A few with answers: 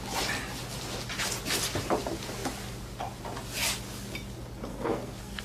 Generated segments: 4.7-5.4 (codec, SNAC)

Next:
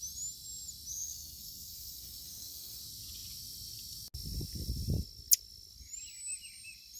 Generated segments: 0.9-2.8 (codec, SNAC)

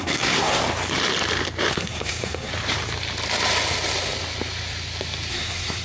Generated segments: 0.0-0.6 (codec, SNAC); 1.7-2.5; 5.3-5.8

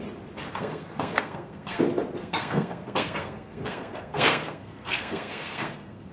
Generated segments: 0.5-1.8 (codec, SNAC); 2.2-6.1

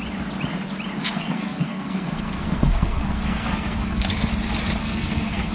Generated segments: 1.0-4.3 (codec, SNAC); 4.8-5.5